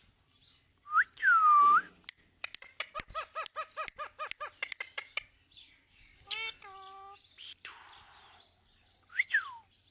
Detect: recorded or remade recorded